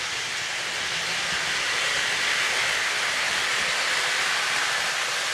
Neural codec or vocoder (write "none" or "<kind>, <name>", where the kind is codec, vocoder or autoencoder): none